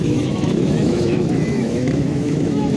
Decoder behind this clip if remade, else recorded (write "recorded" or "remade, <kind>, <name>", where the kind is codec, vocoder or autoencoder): remade, autoencoder, DAC-VAE